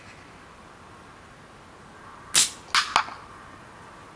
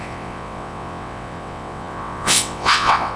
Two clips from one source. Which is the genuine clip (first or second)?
first